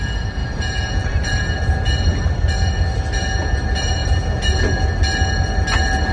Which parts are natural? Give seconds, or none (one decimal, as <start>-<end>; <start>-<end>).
0.0-0.4; 1.4-4.0; 4.6-6.1